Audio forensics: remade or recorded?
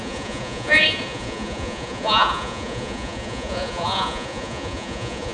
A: remade